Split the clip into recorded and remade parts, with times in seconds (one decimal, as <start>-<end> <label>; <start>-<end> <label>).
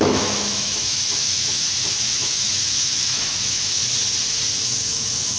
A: 0.0-3.8 remade; 3.8-4.5 recorded; 4.5-5.4 remade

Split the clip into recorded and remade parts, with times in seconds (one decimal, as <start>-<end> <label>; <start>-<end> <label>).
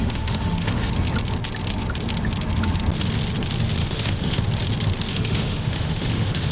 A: 0.0-0.9 remade; 0.9-3.8 recorded; 3.8-4.4 remade; 4.4-5.1 recorded; 5.1-6.5 remade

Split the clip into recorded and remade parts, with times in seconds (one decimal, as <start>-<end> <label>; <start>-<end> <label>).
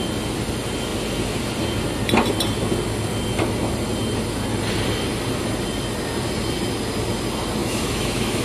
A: 0.0-7.6 recorded; 7.6-8.4 remade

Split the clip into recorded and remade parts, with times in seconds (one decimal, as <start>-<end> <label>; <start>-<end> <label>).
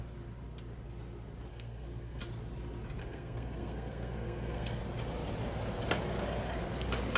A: 0.0-1.5 recorded; 1.5-2.2 remade; 2.2-3.0 recorded; 3.0-4.8 remade; 4.8-7.2 recorded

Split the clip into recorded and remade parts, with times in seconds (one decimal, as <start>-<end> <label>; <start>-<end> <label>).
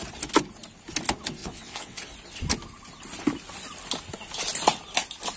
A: 0.0-1.4 recorded; 1.4-2.0 remade; 2.0-5.4 recorded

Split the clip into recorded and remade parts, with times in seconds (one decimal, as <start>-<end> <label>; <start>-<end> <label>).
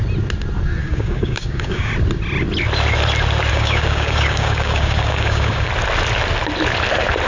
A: 0.0-0.8 recorded; 0.8-1.9 remade; 1.9-3.5 recorded; 3.5-5.7 remade; 5.7-7.3 recorded